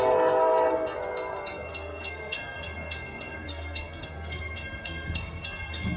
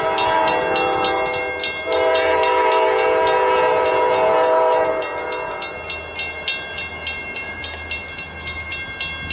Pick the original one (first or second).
second